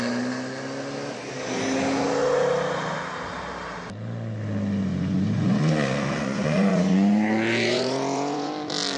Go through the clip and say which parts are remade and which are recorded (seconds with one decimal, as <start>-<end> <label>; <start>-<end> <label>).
0.0-4.9 recorded; 4.9-8.5 remade; 8.5-9.0 recorded